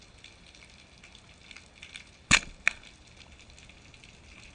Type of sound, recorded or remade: recorded